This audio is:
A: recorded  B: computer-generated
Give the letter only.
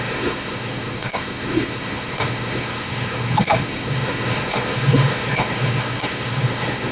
B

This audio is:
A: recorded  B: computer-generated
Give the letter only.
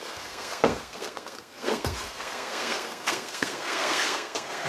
B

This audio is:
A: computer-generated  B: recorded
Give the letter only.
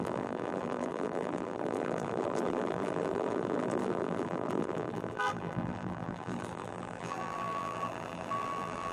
A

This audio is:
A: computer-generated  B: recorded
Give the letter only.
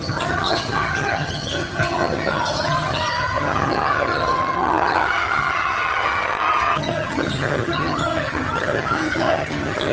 A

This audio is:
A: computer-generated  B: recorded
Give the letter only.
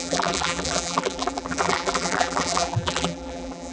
A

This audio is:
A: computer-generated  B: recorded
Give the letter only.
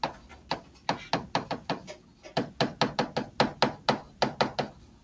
B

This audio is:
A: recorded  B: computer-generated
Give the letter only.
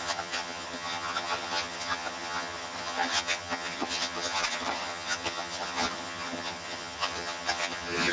B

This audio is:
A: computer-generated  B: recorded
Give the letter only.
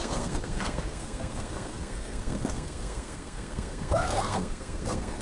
A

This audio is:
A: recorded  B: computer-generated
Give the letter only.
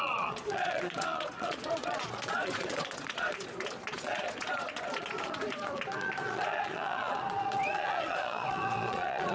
B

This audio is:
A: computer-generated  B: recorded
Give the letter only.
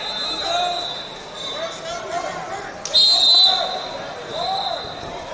B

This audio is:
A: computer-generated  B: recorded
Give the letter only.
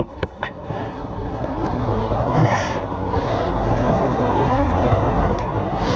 A